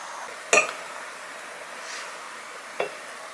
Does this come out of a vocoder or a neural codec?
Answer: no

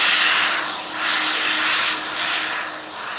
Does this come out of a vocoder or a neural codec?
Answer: no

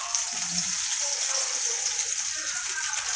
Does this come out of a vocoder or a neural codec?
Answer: yes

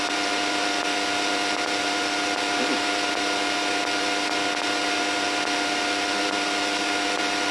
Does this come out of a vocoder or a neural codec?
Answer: no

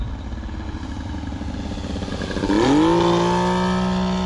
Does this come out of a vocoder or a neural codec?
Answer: no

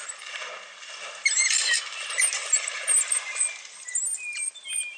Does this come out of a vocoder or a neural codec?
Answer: no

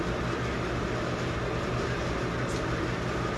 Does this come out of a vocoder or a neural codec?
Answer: no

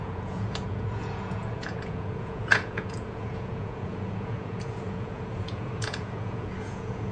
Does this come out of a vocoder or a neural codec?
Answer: yes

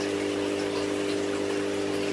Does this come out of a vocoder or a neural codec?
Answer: no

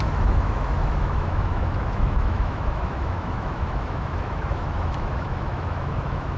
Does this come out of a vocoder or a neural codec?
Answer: yes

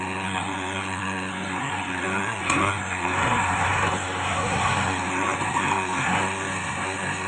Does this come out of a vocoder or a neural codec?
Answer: yes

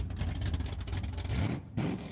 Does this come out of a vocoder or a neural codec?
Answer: no